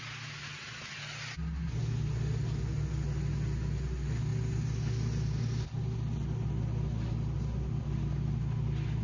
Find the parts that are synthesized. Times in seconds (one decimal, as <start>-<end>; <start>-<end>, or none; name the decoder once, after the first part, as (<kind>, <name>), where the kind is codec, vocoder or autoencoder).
none